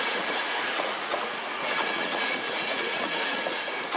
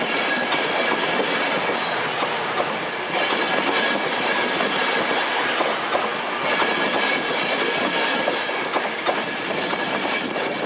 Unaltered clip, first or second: second